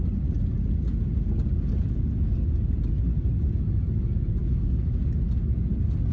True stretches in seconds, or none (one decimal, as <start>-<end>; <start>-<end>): 0.0-4.4; 5.0-6.1